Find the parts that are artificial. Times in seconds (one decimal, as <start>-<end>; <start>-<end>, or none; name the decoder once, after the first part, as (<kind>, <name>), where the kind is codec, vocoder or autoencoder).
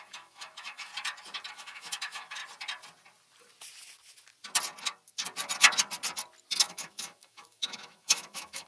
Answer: 0.0-0.9 (autoencoder, DAC-VAE); 1.5-2.4; 6.6-8.7